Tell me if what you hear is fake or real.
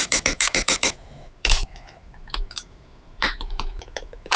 fake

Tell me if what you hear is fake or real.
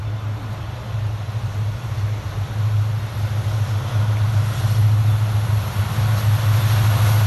real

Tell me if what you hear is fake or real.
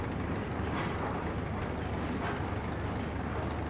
real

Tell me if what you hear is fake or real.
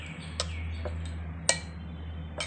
real